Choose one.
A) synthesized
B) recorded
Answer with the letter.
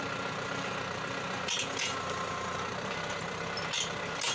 B